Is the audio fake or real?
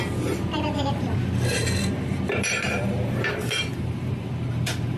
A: fake